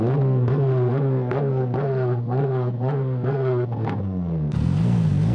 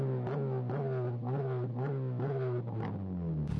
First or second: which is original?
second